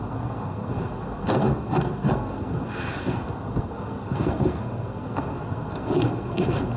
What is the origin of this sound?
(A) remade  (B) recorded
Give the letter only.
A